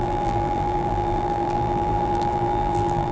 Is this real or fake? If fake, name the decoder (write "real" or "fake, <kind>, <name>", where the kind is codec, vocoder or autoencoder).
fake, vocoder, BigVGAN v2